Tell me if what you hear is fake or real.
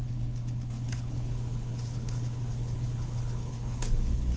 fake